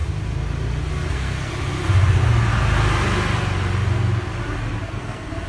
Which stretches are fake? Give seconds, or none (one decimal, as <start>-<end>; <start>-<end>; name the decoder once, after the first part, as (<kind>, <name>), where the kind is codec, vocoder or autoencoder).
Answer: 1.1-1.5 (codec, SNAC); 4.8-5.5